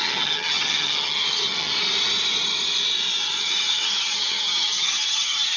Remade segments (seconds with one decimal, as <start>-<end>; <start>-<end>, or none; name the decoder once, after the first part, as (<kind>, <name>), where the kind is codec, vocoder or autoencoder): 0.0-1.7 (vocoder, HiFi-GAN); 3.4-5.6